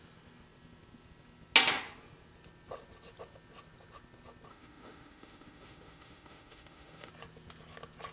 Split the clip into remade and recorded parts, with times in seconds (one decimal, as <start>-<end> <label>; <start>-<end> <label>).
0.0-4.5 recorded; 4.5-7.1 remade; 7.1-8.1 recorded